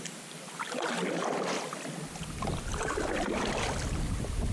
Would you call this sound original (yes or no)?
yes